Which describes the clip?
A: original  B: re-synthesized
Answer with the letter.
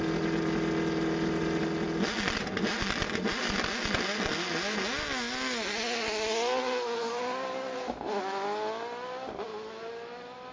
A